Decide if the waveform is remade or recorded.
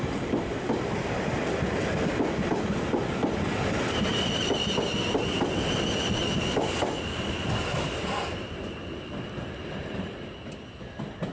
recorded